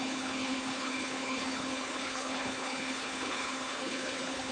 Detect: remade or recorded remade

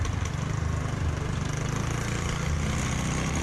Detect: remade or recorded recorded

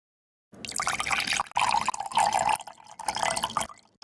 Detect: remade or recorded recorded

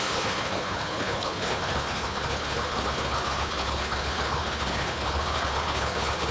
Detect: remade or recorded remade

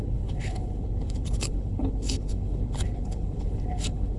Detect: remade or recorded remade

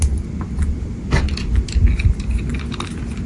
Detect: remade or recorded recorded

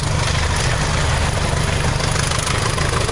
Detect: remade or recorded recorded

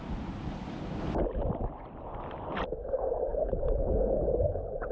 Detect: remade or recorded recorded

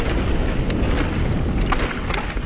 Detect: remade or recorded recorded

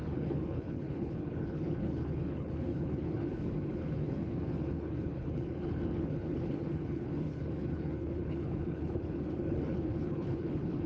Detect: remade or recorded remade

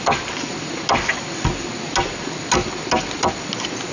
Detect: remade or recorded recorded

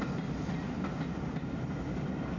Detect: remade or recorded recorded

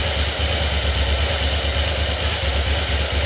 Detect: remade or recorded recorded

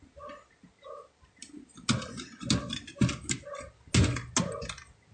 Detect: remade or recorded recorded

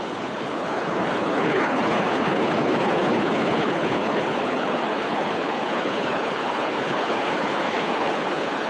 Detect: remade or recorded remade